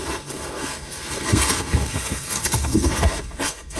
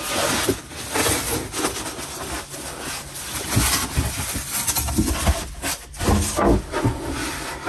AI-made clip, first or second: first